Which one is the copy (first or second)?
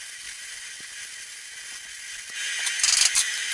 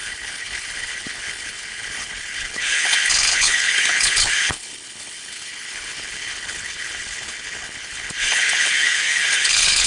second